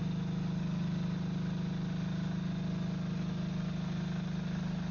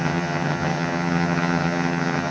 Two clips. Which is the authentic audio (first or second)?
first